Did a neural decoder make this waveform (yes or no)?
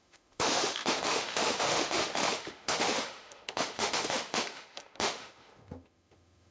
yes